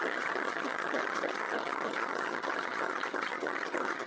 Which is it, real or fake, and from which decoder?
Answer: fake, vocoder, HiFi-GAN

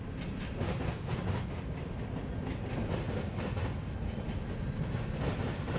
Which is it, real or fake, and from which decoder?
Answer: real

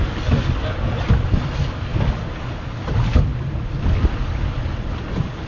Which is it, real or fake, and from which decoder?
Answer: real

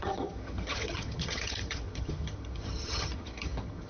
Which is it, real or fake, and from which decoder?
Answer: fake, vocoder, HiFi-GAN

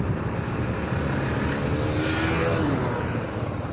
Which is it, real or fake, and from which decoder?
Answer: real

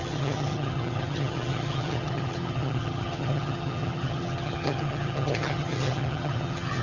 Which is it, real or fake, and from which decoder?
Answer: fake, vocoder, HiFi-GAN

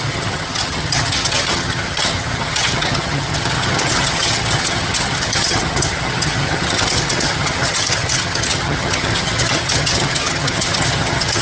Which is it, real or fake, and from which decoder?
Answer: fake, vocoder, HiFi-GAN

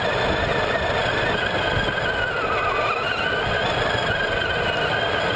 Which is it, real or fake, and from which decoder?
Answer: real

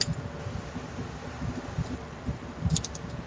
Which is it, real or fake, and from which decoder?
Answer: real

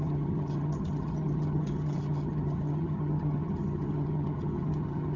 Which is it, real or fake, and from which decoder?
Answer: fake, vocoder, HiFi-GAN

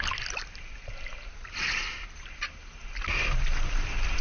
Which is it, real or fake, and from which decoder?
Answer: real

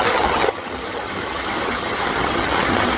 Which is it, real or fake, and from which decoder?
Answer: fake, vocoder, HiFi-GAN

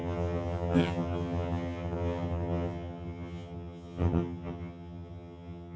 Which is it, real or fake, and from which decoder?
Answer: fake, vocoder, HiFi-GAN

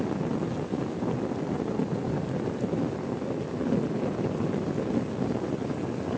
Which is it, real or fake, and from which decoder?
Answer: real